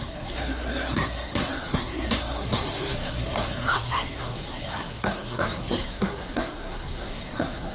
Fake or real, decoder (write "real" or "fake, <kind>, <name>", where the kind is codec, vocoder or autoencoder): fake, codec, SNAC